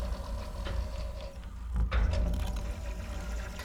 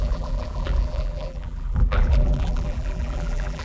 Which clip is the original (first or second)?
first